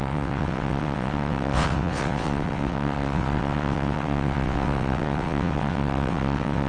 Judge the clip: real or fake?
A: fake